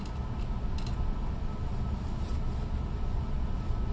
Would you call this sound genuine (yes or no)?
yes